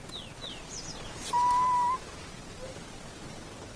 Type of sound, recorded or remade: recorded